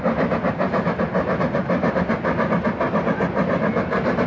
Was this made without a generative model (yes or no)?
yes